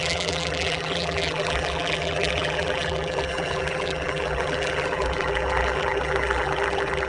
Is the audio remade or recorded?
remade